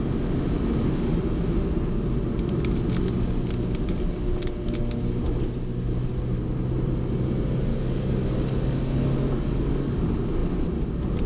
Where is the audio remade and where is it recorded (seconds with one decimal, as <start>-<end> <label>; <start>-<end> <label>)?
0.0-7.7 recorded; 7.7-10.0 remade; 10.0-11.3 recorded